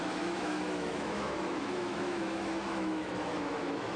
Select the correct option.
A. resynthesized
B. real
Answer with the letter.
A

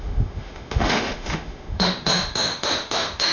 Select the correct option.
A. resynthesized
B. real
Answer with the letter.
A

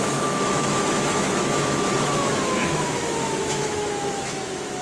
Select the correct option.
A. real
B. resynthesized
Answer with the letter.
B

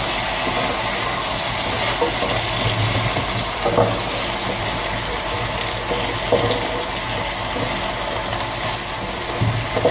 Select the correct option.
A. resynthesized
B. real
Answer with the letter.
B